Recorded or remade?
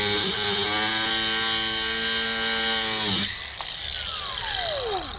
recorded